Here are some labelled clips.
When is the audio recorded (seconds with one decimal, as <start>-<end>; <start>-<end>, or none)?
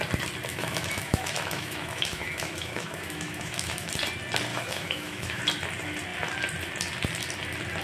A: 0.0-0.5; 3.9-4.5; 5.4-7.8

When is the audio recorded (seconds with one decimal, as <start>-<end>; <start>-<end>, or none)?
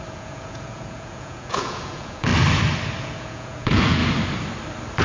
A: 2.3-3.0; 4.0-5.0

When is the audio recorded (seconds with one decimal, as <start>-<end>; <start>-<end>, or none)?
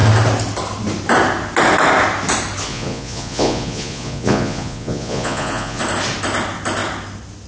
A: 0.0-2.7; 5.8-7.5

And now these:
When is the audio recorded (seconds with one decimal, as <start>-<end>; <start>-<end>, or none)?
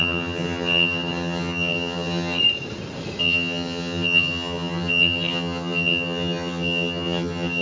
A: 2.4-3.2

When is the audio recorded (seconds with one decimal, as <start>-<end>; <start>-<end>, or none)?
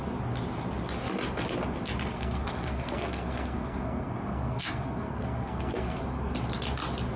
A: 0.0-2.1; 6.0-7.2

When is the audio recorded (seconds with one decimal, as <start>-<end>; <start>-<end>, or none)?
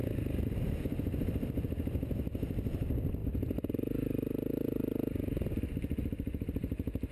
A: 0.0-7.1